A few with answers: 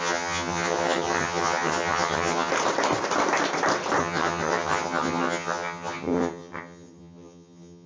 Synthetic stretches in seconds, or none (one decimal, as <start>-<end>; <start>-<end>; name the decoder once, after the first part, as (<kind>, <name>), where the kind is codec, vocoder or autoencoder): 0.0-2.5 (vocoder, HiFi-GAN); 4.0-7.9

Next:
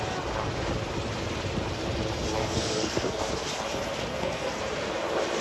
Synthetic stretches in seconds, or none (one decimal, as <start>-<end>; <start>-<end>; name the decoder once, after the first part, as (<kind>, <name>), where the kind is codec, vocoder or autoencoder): 2.4-3.3 (codec, SNAC); 4.1-4.6

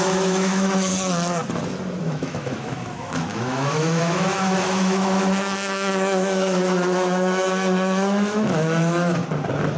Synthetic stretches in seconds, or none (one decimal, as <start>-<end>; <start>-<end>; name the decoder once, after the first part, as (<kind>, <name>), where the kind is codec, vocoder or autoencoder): 0.0-0.9 (autoencoder, DAC-VAE); 2.0-9.2